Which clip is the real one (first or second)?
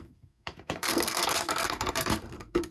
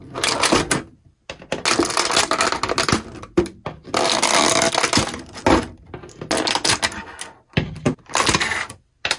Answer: second